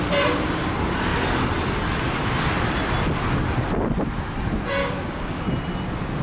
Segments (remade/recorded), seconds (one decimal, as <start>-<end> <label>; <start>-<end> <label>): 0.0-4.8 recorded; 4.8-5.4 remade; 5.4-6.2 recorded